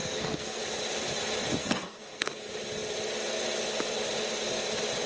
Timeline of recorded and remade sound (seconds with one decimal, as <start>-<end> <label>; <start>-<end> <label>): 0.0-0.6 remade; 0.6-1.6 recorded; 1.6-2.5 remade; 2.5-5.1 recorded